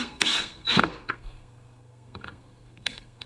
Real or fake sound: fake